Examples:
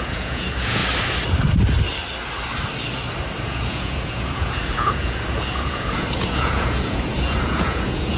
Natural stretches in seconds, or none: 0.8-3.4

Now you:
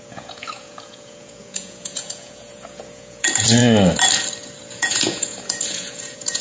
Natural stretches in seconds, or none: 3.6-4.6

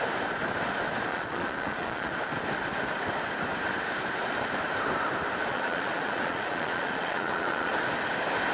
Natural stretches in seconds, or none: 0.0-1.1; 2.1-5.5; 7.7-8.5

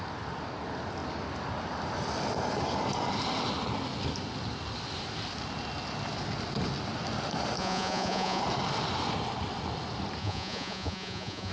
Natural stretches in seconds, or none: 0.0-7.6; 8.4-10.2

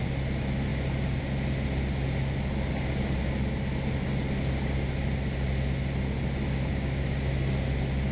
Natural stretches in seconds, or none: 0.0-8.1